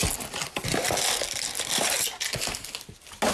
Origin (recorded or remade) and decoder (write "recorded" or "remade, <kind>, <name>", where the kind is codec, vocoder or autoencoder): recorded